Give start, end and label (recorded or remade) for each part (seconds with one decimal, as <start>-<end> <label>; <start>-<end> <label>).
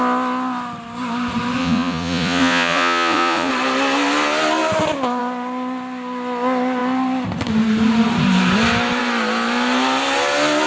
0.0-1.6 recorded; 1.6-3.5 remade; 3.5-10.7 recorded